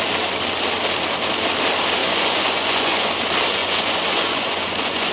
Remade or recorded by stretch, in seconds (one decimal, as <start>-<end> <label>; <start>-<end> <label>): 0.0-2.0 recorded; 2.0-3.1 remade; 3.1-3.6 recorded; 3.6-5.1 remade